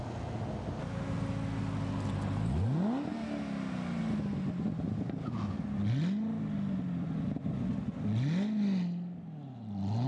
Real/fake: real